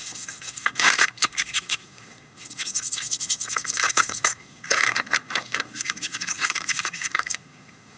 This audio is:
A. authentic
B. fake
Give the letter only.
B